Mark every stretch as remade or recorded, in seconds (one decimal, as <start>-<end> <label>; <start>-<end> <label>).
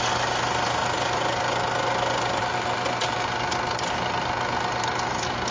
0.0-5.5 recorded